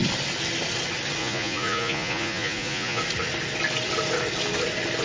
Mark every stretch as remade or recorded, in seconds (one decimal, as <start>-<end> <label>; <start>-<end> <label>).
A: 0.0-1.2 recorded; 1.2-3.0 remade; 3.0-5.0 recorded